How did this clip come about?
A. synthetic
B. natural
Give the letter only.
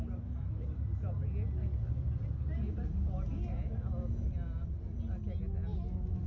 B